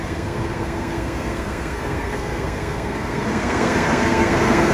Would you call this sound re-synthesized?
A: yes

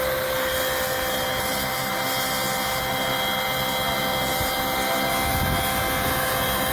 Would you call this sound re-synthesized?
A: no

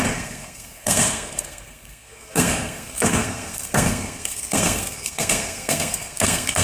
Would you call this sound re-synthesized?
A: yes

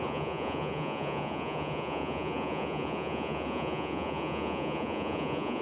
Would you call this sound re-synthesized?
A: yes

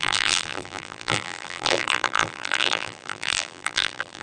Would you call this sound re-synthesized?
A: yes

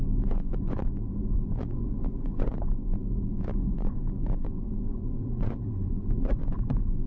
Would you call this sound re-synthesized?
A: yes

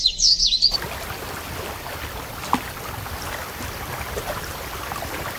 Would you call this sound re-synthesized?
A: yes